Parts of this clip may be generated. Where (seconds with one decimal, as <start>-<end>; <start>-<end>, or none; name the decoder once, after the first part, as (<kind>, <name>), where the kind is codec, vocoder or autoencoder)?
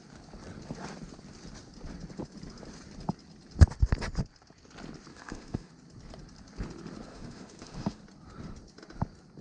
5.1-5.7 (autoencoder, DAC-VAE); 7.1-8.0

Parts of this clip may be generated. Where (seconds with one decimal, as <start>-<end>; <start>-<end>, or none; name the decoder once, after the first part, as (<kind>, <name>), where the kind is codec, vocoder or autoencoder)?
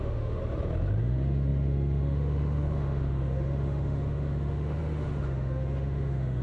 0.0-0.4 (autoencoder, DAC-VAE); 1.0-6.4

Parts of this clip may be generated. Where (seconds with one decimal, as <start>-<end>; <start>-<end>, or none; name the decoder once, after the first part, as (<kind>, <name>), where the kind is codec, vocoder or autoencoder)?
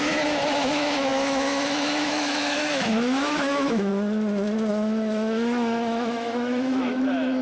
0.0-3.9 (autoencoder, DAC-VAE); 4.7-7.4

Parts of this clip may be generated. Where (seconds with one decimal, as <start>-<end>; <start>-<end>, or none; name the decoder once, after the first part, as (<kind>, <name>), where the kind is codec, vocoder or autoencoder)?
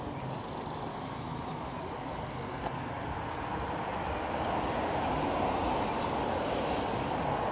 0.9-1.8 (autoencoder, DAC-VAE)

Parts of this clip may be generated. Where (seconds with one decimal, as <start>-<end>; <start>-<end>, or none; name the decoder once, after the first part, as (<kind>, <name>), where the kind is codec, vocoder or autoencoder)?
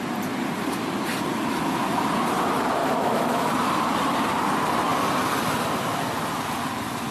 2.8-3.5 (autoencoder, DAC-VAE)